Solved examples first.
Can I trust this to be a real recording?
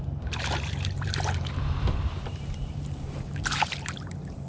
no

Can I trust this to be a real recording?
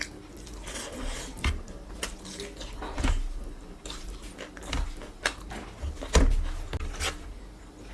yes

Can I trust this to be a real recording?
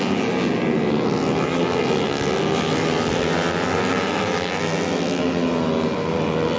yes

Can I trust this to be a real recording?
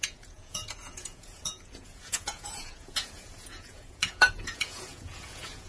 no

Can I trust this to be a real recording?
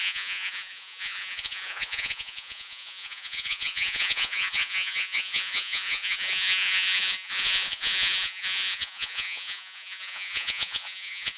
no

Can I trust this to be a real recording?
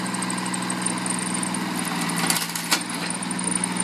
yes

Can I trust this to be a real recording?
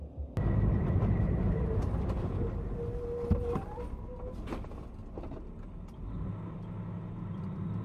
yes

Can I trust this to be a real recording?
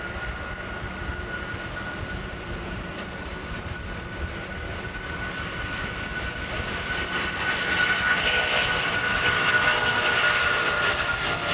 yes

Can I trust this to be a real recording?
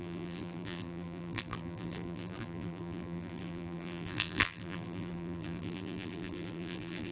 no